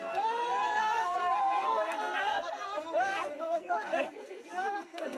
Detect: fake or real fake